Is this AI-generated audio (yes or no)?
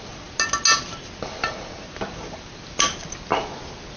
no